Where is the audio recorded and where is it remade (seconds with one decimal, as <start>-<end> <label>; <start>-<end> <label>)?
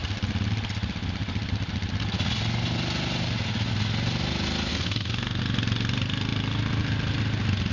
0.0-4.7 recorded; 4.7-5.4 remade; 5.4-7.7 recorded